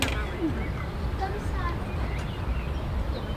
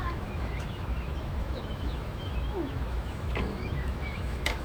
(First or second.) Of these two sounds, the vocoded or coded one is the second